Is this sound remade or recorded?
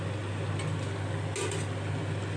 recorded